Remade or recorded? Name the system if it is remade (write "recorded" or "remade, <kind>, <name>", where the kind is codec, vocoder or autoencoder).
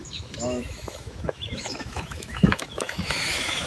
remade, autoencoder, DAC-VAE